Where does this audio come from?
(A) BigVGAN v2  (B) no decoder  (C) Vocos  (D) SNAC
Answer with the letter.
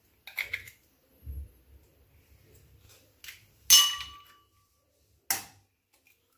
B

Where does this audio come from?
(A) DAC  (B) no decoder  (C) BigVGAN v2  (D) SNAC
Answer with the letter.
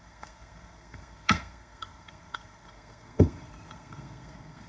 D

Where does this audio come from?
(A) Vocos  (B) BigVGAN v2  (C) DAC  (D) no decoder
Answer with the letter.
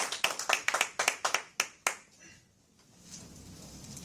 D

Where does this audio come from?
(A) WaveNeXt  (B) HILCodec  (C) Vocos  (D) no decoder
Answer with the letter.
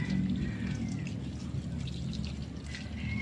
D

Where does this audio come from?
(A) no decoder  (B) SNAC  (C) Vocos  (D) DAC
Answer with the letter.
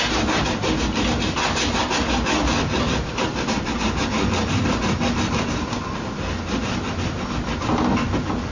A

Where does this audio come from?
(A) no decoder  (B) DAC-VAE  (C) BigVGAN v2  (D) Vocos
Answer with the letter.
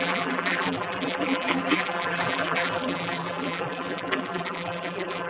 C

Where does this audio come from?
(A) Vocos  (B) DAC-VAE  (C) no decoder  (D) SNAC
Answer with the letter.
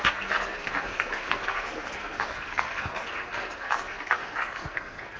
D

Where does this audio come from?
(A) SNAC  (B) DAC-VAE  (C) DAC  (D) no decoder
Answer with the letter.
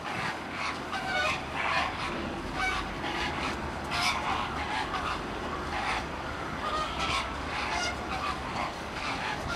C